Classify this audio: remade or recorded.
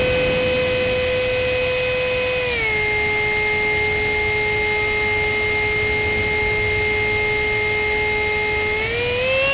recorded